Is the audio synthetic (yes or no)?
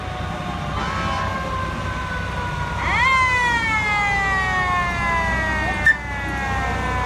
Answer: no